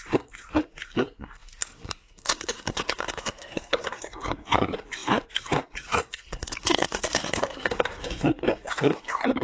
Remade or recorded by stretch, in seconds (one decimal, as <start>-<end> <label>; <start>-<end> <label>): 0.0-9.4 remade